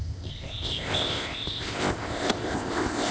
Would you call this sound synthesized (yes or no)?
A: yes